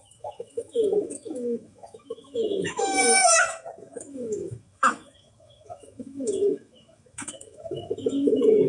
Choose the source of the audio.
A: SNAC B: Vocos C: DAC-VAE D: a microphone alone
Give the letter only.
C